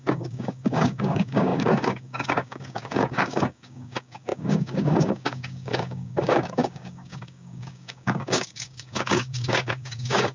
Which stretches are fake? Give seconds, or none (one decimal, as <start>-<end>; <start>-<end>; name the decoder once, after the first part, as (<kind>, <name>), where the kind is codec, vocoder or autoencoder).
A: 0.0-10.3 (codec, DAC)